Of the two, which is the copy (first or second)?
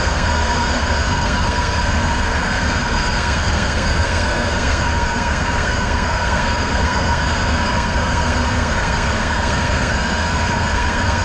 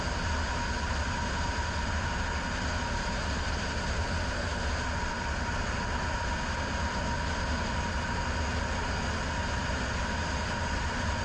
first